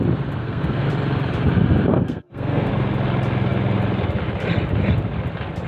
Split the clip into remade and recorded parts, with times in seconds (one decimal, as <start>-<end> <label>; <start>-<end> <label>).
0.0-0.4 recorded; 0.4-0.9 remade; 0.9-1.9 recorded; 1.9-2.7 remade; 2.7-5.7 recorded